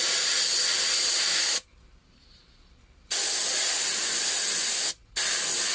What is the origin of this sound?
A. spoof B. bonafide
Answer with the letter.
B